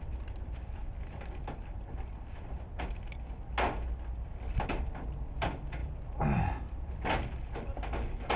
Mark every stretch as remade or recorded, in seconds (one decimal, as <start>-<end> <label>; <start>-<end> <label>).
0.0-8.4 recorded